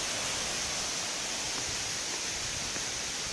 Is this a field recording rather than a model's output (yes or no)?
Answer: yes